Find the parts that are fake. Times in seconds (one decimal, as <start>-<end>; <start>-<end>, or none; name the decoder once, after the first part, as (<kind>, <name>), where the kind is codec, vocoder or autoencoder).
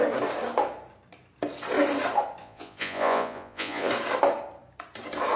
2.4-3.9 (vocoder, Vocos)